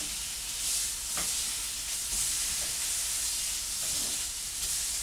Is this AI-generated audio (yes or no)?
no